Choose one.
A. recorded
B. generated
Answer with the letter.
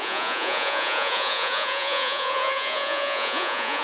B